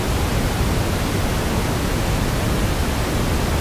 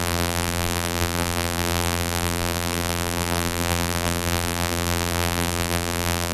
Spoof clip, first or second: second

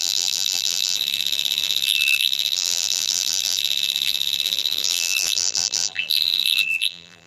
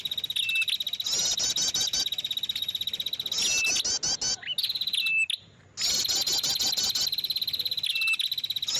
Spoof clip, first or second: first